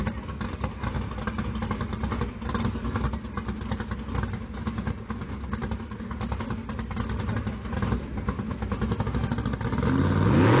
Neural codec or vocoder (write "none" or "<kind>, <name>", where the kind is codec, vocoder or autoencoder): none